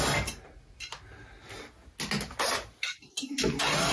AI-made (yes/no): no